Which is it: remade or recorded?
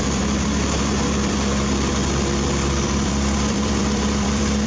remade